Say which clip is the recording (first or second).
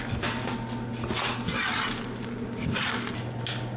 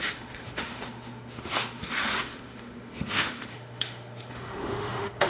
first